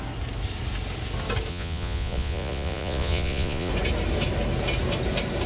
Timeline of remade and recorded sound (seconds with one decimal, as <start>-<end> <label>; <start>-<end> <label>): 0.0-1.5 recorded; 1.5-3.7 remade; 3.7-5.5 recorded